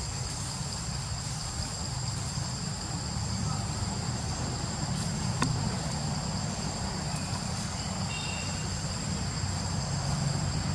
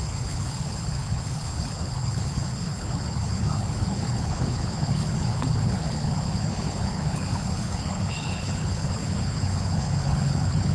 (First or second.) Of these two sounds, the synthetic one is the second